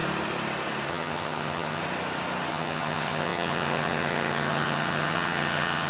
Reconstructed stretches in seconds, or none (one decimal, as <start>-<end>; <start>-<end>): 0.9-1.8; 2.5-5.9